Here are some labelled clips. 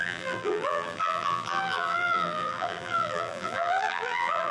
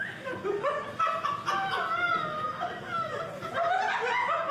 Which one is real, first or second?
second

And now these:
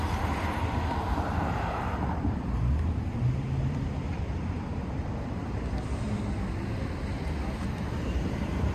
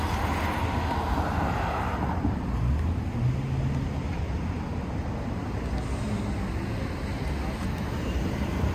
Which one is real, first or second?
second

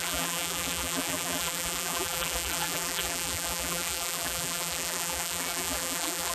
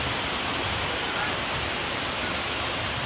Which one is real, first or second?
second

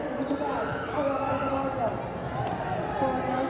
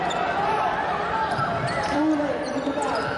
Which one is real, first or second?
first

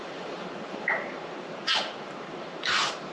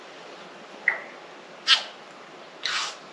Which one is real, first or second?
second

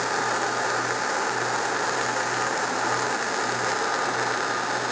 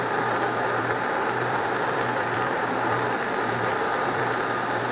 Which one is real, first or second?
first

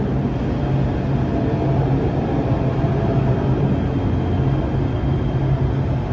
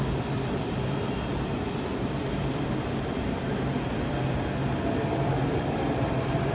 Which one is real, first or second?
first